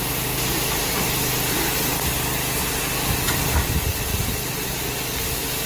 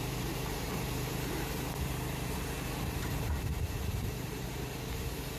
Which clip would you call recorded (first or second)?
first